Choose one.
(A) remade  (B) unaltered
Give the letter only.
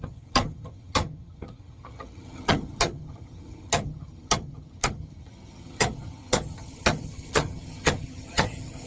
A